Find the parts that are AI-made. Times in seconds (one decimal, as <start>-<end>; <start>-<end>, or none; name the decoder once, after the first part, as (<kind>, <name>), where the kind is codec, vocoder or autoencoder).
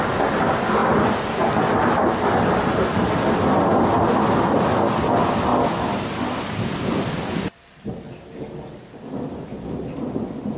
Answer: none